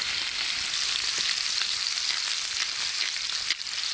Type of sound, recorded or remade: recorded